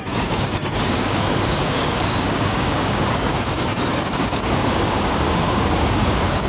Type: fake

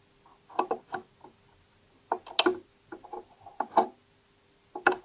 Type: real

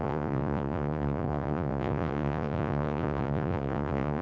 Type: fake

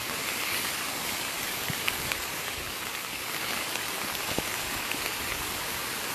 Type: fake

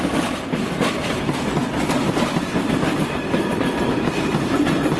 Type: real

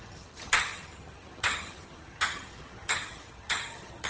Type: fake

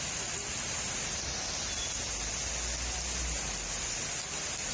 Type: real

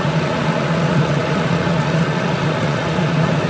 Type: fake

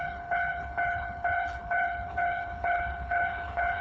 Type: fake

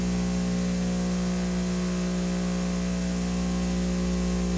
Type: real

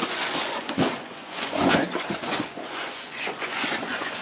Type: fake